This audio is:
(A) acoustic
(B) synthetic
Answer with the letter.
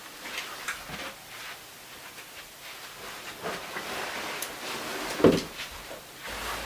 A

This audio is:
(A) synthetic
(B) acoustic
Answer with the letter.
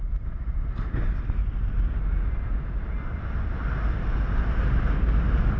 B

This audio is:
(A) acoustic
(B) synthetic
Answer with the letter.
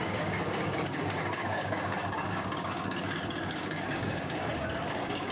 B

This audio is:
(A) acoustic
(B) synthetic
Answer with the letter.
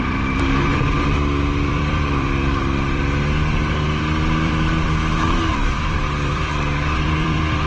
B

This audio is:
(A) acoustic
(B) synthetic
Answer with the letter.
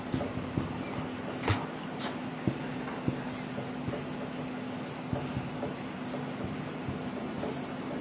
A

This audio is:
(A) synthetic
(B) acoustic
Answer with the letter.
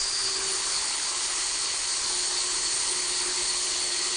A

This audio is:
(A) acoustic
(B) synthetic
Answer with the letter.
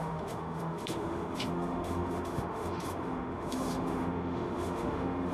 B